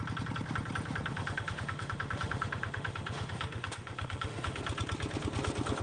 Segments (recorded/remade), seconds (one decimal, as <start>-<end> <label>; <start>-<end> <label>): 0.0-1.1 recorded; 1.1-4.6 remade; 4.6-5.8 recorded